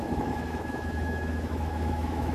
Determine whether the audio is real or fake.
fake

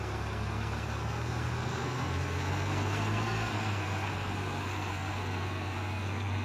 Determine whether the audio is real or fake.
fake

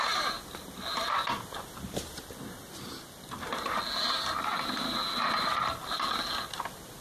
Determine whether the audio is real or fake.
real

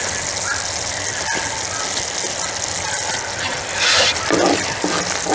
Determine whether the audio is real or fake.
real